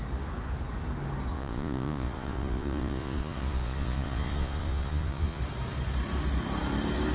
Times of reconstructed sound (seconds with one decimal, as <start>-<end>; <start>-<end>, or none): 1.3-5.4